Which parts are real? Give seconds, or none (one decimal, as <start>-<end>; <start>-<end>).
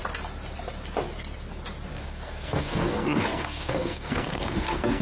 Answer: 0.0-1.9